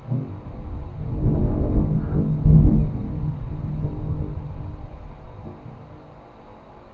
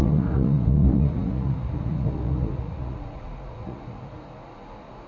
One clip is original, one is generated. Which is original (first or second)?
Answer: first